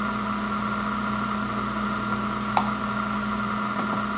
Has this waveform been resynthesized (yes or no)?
no